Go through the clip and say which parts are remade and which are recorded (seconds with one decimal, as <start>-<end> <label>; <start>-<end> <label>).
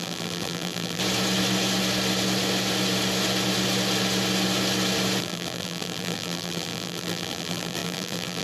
0.0-1.0 remade; 1.0-5.2 recorded; 5.2-8.4 remade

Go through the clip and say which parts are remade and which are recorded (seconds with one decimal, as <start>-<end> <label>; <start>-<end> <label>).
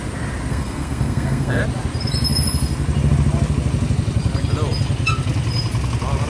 0.0-0.5 recorded; 0.5-1.6 remade; 1.6-6.3 recorded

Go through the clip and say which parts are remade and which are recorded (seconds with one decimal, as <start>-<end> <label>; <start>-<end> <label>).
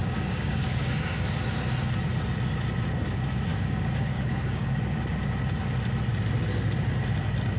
0.0-1.4 remade; 1.4-3.5 recorded; 3.5-4.7 remade; 4.7-7.6 recorded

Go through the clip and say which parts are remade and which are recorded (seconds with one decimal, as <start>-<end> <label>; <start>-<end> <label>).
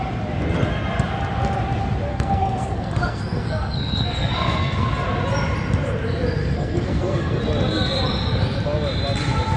0.0-2.1 recorded; 2.1-4.9 remade; 4.9-6.4 recorded; 6.4-7.4 remade; 7.4-9.6 recorded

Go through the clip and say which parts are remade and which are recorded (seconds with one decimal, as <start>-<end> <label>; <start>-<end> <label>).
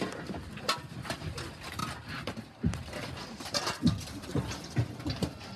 0.0-5.6 recorded